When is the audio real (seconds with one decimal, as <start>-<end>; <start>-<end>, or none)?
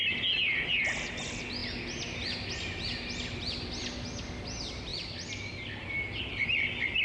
0.0-7.0